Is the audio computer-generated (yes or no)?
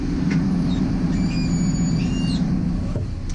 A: no